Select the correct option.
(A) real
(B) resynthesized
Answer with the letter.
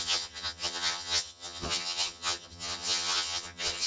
B